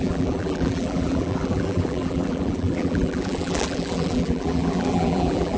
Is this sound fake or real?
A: fake